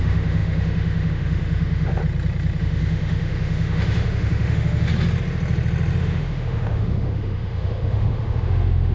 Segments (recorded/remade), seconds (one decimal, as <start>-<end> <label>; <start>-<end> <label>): 0.0-2.0 remade; 2.0-2.6 recorded; 2.6-4.9 remade; 4.9-6.0 recorded; 6.0-8.9 remade